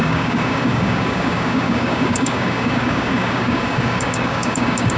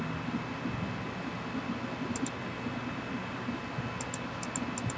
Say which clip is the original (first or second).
second